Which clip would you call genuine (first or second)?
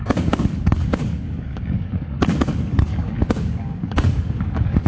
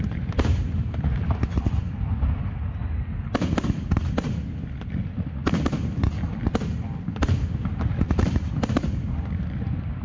second